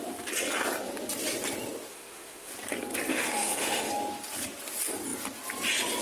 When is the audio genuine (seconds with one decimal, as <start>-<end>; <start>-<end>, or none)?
0.0-1.9; 2.5-3.1; 3.9-6.0